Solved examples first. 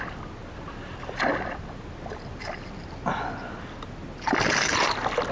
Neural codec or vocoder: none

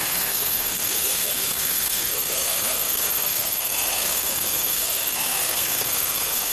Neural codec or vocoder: codec, SNAC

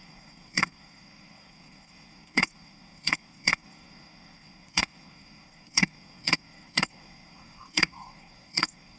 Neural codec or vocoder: codec, SNAC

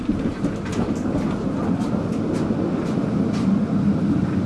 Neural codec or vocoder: none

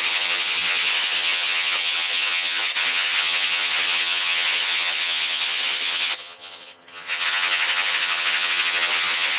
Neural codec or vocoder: vocoder, HiFi-GAN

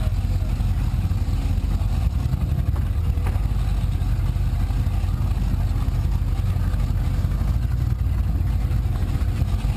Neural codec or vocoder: none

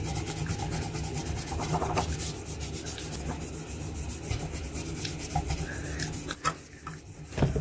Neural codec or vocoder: none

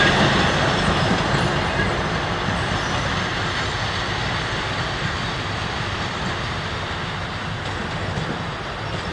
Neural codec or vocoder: vocoder, BigVGAN v2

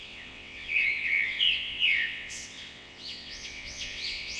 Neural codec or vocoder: vocoder, WaveNeXt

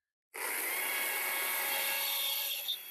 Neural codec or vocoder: vocoder, BigVGAN v2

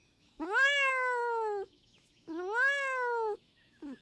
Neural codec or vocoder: autoencoder, DAC-VAE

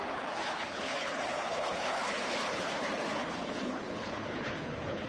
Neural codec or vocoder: codec, HILCodec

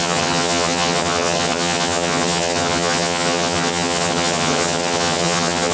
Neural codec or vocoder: vocoder, HiFi-GAN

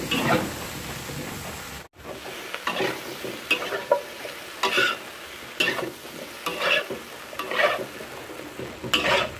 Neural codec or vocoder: none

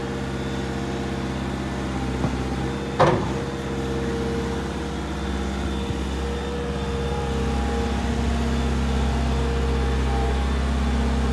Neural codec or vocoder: none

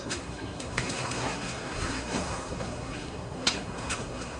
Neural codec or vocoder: codec, SNAC